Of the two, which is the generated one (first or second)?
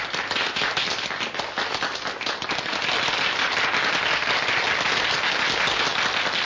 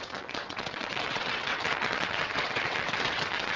second